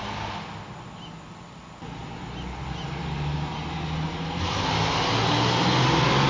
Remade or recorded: recorded